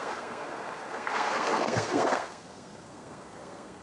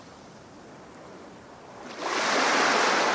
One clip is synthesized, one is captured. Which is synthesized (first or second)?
first